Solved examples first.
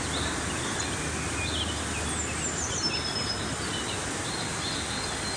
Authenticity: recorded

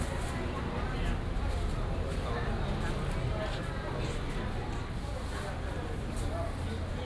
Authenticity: recorded